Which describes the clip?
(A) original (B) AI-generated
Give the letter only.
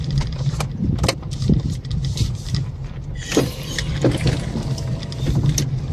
A